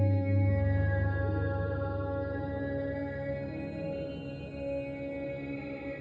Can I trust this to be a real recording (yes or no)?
yes